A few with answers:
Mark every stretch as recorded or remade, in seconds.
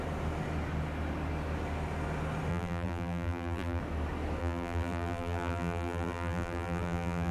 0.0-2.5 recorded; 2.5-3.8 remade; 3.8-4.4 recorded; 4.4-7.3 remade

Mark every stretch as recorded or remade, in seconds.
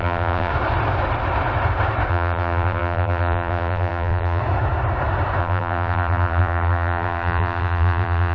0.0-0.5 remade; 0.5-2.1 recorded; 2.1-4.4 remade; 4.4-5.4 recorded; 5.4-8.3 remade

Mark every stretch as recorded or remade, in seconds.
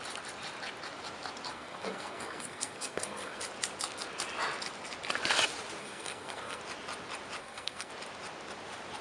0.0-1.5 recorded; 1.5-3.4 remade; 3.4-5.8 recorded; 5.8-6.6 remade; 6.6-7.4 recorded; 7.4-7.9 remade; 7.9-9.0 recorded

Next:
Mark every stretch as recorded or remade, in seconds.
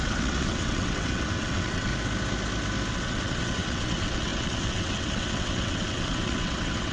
0.0-1.9 remade; 1.9-2.9 recorded; 2.9-6.9 remade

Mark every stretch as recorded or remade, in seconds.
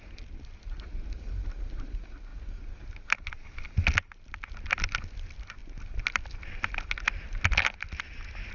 0.0-8.5 recorded